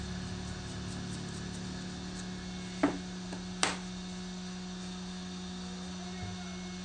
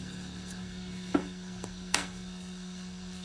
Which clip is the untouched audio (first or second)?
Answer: first